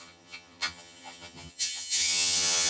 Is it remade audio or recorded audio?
remade